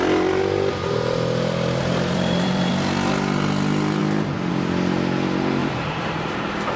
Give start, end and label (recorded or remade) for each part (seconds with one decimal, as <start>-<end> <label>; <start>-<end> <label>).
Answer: 0.0-1.8 recorded; 1.8-2.7 remade; 2.7-5.6 recorded; 5.6-6.8 remade